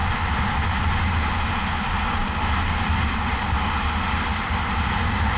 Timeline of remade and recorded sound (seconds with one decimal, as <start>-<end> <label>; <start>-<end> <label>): 0.0-5.4 recorded